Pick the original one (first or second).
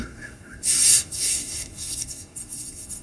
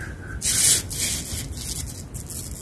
second